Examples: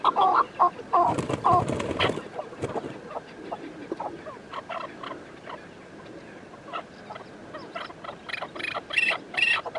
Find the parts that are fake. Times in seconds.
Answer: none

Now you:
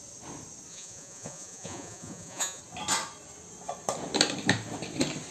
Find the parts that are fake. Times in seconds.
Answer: 0.7-2.6 (vocoder, Vocos)

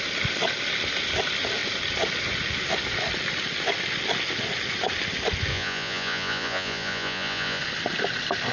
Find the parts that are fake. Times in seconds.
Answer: 5.5-7.6 (vocoder, Vocos)

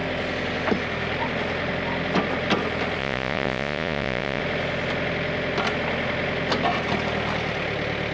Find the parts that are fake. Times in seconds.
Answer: 3.0-4.4 (vocoder, Vocos)

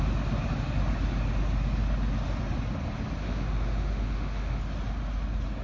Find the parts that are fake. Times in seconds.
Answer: 3.2-4.6 (autoencoder, DAC-VAE)

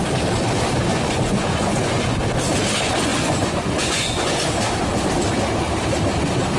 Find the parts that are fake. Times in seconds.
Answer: 0.9-2.2 (vocoder, Vocos); 3.1-4.5